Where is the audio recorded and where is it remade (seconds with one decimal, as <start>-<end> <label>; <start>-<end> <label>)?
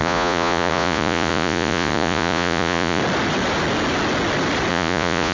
0.0-3.0 remade; 3.0-4.7 recorded; 4.7-5.3 remade